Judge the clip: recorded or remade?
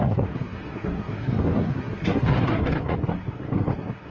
remade